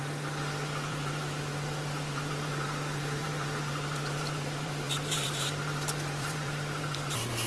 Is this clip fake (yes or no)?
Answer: yes